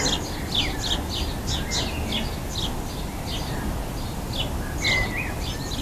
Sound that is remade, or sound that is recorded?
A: recorded